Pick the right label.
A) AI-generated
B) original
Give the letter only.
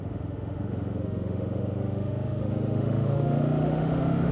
A